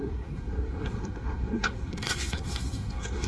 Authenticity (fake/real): fake